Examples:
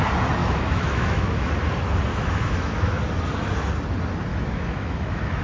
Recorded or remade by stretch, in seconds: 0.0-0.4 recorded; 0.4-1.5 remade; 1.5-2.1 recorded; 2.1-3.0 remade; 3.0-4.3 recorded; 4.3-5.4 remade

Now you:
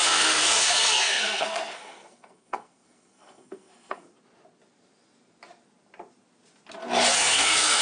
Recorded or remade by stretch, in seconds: 0.0-4.1 remade; 4.1-7.1 recorded; 7.1-7.8 remade

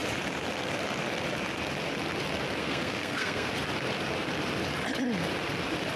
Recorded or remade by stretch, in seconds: 0.0-2.6 recorded; 2.6-3.5 remade; 3.5-6.0 recorded

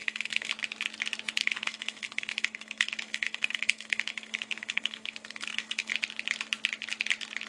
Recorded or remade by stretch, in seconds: 0.0-0.5 remade; 0.5-1.4 recorded; 1.4-5.9 remade; 5.9-7.5 recorded